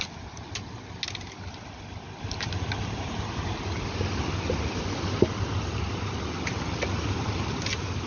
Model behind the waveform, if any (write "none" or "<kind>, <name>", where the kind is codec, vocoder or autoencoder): none